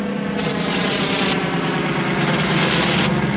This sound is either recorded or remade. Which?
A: recorded